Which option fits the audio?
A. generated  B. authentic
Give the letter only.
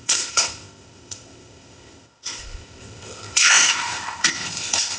A